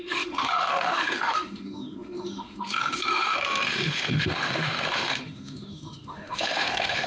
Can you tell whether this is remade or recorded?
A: remade